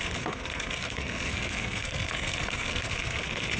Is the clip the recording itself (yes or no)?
no